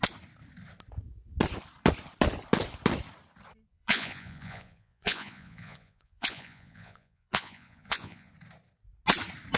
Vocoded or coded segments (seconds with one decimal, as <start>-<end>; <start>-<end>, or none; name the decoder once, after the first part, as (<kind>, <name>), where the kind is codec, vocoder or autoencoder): 3.7-8.3 (vocoder, Vocos)